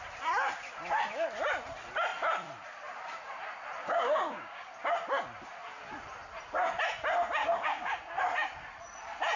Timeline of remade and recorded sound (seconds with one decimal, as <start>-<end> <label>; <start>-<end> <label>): 0.0-3.8 recorded; 3.8-4.7 remade; 4.7-7.4 recorded; 7.4-8.1 remade; 8.1-9.4 recorded